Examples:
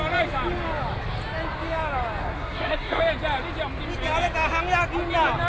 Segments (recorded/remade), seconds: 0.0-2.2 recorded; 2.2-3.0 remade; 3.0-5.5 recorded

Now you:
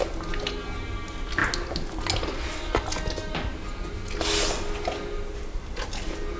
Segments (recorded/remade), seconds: 0.0-6.4 recorded

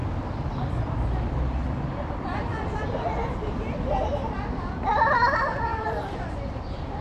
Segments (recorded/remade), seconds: 0.0-1.2 recorded; 1.2-2.5 remade; 2.5-4.2 recorded; 4.2-7.0 remade

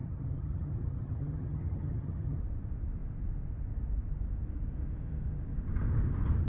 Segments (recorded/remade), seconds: 0.0-2.4 remade; 2.4-6.5 recorded

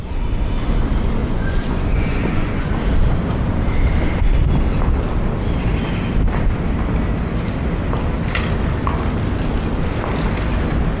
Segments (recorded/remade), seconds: 0.0-1.2 recorded; 1.2-2.7 remade; 2.7-11.0 recorded